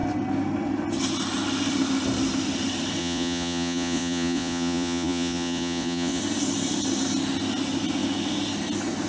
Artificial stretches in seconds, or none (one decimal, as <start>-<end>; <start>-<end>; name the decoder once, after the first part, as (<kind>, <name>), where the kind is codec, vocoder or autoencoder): 3.0-6.2 (vocoder, Vocos)